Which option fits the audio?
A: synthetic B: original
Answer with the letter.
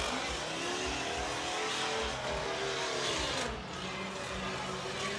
B